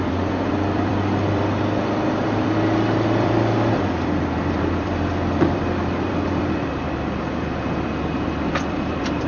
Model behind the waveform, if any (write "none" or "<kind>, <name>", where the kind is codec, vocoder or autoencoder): vocoder, BigVGAN v2